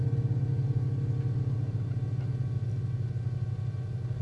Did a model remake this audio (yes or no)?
no